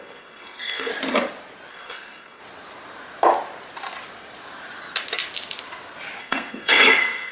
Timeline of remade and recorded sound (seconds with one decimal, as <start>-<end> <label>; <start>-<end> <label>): 0.0-0.9 remade; 0.9-1.7 recorded; 1.7-2.4 remade; 2.4-6.2 recorded; 6.2-7.3 remade